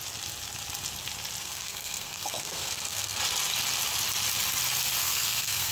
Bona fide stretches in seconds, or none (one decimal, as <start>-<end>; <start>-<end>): 0.0-1.4; 3.2-5.0